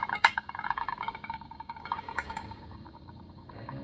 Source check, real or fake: fake